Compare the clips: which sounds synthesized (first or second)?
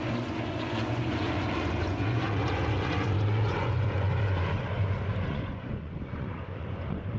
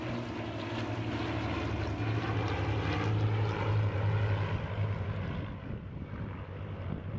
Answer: first